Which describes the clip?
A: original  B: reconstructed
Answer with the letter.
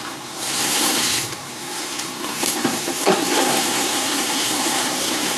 B